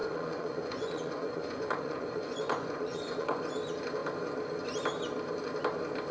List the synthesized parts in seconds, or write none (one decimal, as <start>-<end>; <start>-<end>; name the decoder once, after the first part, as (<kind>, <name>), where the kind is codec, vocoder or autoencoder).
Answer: 0.0-3.4 (vocoder, Vocos)